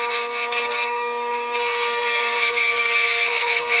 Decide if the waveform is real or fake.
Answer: fake